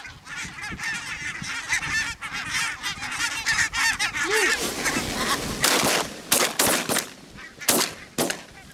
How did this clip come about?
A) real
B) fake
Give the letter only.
A